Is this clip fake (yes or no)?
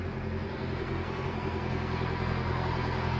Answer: yes